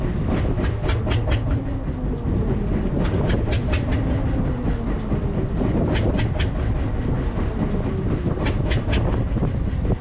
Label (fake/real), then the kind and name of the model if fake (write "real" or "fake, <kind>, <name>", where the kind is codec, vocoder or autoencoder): real